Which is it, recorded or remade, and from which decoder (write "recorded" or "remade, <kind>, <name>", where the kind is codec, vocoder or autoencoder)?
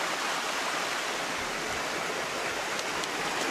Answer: recorded